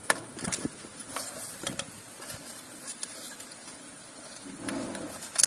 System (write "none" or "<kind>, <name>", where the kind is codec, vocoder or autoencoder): vocoder, BigVGAN v2